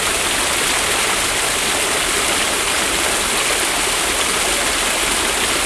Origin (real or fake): real